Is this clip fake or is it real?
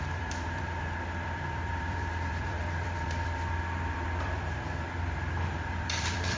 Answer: fake